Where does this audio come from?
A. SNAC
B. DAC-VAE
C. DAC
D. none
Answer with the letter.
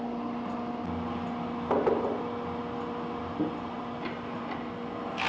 D